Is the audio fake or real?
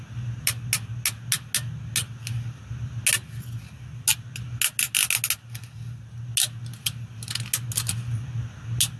real